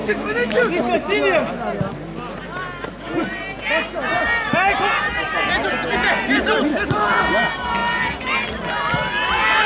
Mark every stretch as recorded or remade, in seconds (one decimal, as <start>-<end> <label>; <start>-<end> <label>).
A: 0.0-0.6 remade; 0.6-9.7 recorded